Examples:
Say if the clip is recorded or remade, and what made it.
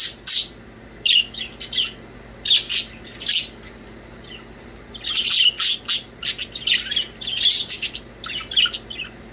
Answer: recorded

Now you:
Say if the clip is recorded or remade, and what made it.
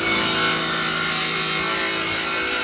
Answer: recorded